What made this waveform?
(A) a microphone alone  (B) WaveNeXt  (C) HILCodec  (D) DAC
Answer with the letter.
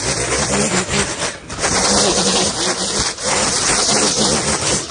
A